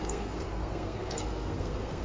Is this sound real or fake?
fake